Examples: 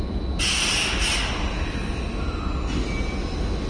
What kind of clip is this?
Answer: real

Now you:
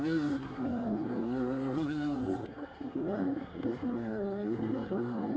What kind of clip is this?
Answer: fake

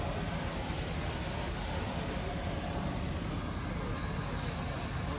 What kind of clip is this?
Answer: real